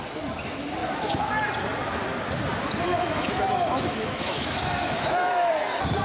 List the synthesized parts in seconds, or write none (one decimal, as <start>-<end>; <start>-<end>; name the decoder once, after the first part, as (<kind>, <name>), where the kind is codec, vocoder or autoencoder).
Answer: 0.8-1.3 (autoencoder, DAC-VAE); 2.9-5.5